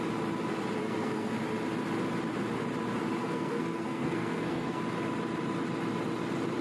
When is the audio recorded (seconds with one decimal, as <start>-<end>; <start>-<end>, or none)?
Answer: 0.0-0.8; 1.3-3.2; 4.8-6.6